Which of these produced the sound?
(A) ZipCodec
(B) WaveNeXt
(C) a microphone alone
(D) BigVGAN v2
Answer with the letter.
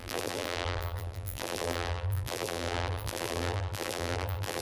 D